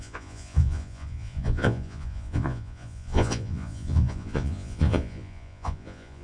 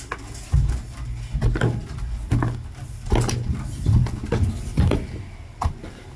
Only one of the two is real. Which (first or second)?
second